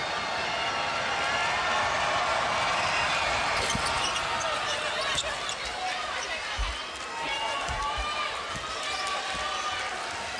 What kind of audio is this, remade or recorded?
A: recorded